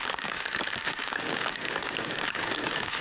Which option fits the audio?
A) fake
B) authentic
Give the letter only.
A